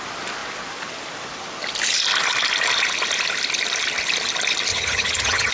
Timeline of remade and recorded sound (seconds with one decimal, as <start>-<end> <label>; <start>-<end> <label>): 0.0-4.7 recorded; 4.7-5.5 remade